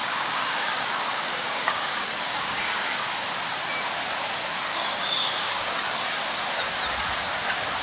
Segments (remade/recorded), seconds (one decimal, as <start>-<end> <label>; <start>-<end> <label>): 0.0-2.9 remade; 2.9-4.7 recorded; 4.7-5.7 remade; 5.7-7.8 recorded